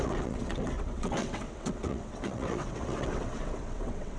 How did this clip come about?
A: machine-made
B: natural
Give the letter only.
A